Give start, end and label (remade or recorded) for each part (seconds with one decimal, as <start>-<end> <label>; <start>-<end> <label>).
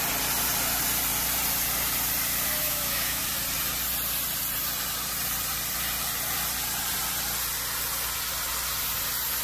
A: 0.0-2.6 recorded; 2.6-3.2 remade; 3.2-9.4 recorded